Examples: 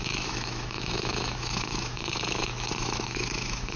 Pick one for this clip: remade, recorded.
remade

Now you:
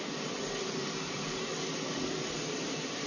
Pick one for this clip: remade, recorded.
recorded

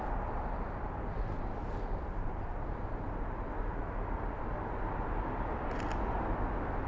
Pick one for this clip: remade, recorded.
recorded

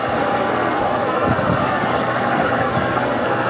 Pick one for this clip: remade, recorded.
remade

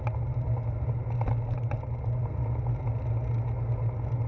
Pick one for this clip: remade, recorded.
recorded